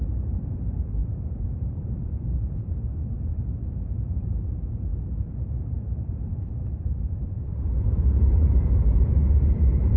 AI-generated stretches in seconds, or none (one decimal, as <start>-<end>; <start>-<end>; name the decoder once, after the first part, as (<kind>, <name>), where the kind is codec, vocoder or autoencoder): 0.0-10.0 (vocoder, BigVGAN v2)